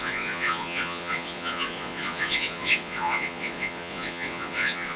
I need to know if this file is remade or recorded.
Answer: remade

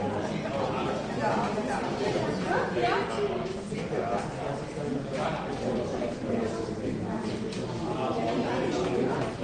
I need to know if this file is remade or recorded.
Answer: recorded